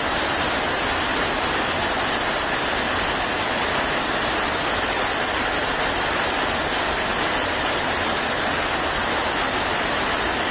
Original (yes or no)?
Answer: yes